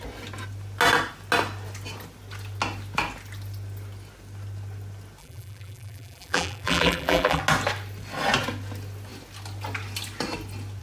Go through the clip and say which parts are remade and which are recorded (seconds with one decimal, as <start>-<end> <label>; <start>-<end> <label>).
0.0-5.2 recorded; 5.2-7.4 remade; 7.4-10.8 recorded